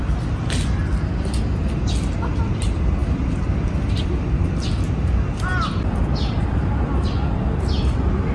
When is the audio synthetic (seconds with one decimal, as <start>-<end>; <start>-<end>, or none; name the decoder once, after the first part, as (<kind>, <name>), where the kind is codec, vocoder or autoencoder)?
none